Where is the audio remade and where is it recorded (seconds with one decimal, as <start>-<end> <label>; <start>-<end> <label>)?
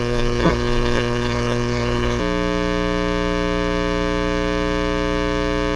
0.0-2.2 remade; 2.2-5.8 recorded